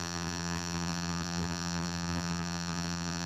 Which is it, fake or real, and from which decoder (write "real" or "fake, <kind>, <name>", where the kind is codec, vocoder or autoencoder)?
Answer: fake, vocoder, BigVGAN v2